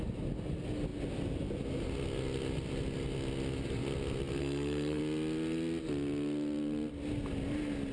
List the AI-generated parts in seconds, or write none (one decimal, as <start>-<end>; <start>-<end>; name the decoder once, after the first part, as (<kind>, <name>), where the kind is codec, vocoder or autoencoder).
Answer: 4.4-5.0 (codec, SNAC)